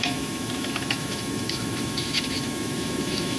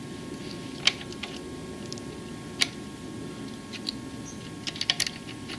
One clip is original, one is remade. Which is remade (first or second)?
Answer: first